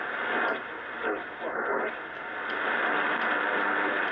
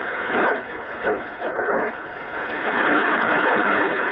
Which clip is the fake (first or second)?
second